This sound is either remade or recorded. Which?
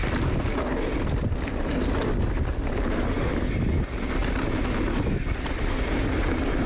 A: recorded